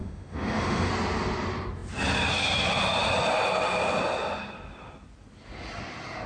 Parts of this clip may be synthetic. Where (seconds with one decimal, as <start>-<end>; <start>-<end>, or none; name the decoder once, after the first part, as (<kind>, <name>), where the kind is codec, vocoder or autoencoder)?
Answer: 0.0-0.9 (autoencoder, DAC-VAE)